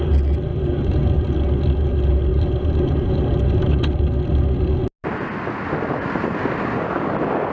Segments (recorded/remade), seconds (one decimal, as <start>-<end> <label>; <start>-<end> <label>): 0.0-0.5 recorded; 0.5-1.1 remade; 1.1-2.3 recorded; 2.3-4.0 remade; 4.0-7.5 recorded